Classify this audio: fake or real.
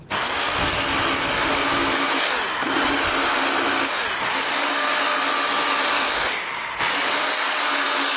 real